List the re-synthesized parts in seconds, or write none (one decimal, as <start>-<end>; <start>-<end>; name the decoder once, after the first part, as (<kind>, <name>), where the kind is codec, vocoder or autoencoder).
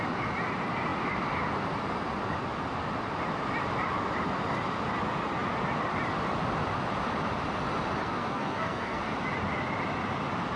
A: 8.0-9.0 (codec, SNAC)